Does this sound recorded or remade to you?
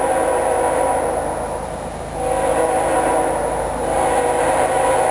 recorded